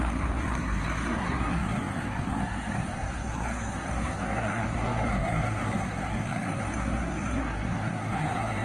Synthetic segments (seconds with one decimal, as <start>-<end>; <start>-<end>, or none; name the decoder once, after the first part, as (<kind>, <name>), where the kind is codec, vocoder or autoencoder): 0.0-8.6 (codec, SNAC)